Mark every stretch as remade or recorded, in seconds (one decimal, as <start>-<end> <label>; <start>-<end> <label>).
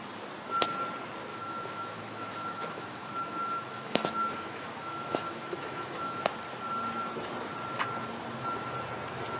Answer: 0.0-1.3 recorded; 1.3-6.2 remade; 6.2-9.4 recorded